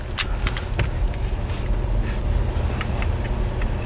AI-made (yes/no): no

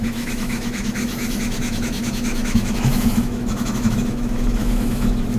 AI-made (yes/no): yes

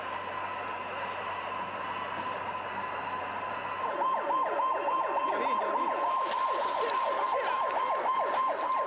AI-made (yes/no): no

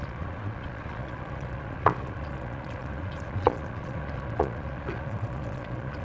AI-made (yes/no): yes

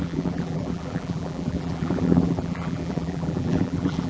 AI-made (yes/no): yes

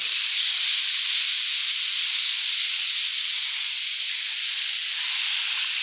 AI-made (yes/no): no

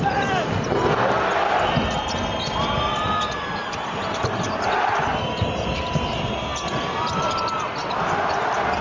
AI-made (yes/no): no